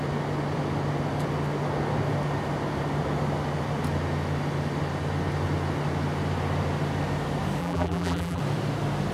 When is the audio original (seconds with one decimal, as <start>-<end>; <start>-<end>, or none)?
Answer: 0.0-7.6; 8.4-9.1

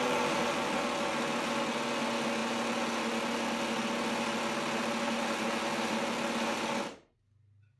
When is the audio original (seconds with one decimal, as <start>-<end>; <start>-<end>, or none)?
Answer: 0.0-7.8

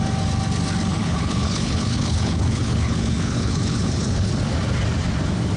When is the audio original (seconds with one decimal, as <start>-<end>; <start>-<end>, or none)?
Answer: 0.0-0.9; 4.3-5.6

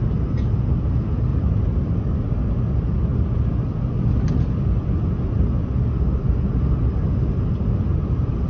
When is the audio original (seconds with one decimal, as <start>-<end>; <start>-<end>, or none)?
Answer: 0.0-1.3; 2.5-7.9